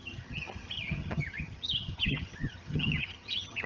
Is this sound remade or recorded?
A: remade